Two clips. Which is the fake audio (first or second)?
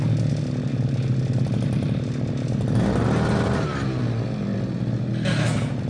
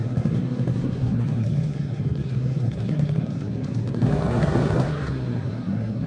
second